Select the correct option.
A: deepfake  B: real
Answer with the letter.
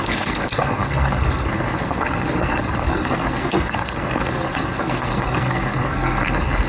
A